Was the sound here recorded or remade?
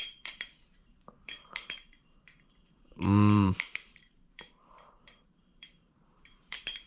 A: remade